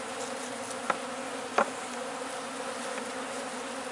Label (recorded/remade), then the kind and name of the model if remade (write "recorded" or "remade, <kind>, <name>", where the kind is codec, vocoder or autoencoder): recorded